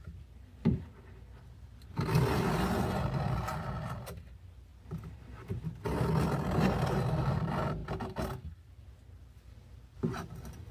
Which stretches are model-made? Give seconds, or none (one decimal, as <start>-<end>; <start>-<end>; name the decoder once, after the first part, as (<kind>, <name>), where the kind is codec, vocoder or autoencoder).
4.7-5.2 (vocoder, BigVGAN v2)